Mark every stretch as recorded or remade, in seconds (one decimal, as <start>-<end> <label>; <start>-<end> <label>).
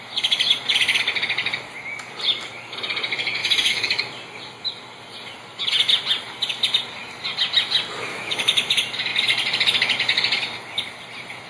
0.0-3.4 recorded; 3.4-4.0 remade; 4.0-8.1 recorded; 8.1-8.7 remade; 8.7-11.5 recorded